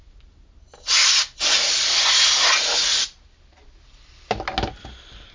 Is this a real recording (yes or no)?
yes